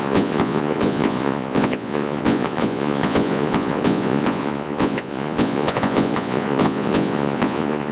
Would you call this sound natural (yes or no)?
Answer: no